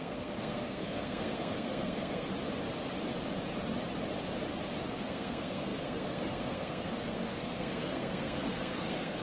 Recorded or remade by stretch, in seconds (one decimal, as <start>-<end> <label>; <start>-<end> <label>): 0.0-2.3 remade; 2.3-4.8 recorded; 4.8-9.2 remade